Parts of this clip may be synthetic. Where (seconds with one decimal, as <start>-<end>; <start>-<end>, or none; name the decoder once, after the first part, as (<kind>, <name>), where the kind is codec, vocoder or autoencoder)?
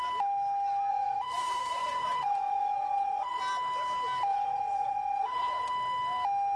0.9-3.4 (vocoder, Vocos); 4.3-5.7